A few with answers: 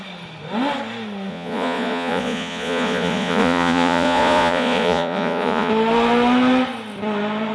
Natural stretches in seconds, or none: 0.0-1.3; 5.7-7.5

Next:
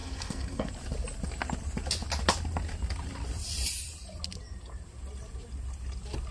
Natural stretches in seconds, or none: 0.7-6.3

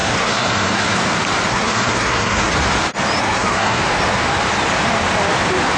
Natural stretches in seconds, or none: 1.0-1.5; 2.5-3.2; 3.8-5.8

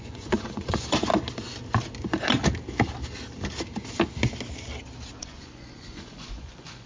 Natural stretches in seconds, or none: 1.1-5.2